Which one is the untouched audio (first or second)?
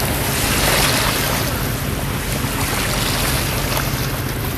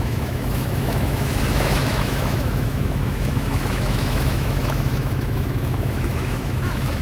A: first